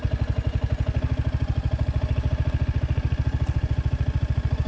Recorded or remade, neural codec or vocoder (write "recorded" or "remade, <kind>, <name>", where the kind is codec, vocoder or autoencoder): recorded